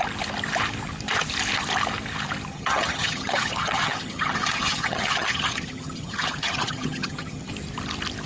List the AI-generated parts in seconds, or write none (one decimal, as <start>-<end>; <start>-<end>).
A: 2.5-7.5